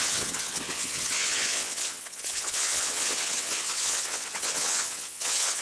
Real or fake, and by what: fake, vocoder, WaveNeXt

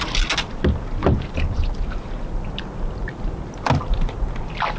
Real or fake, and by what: real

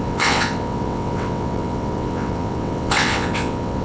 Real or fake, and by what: fake, vocoder, WaveNeXt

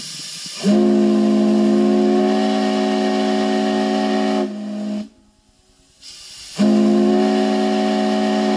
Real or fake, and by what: real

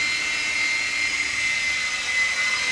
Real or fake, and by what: real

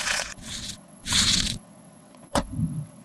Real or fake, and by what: fake, vocoder, WaveNeXt